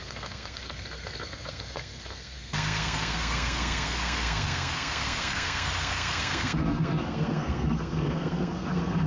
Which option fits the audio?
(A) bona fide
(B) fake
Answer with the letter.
B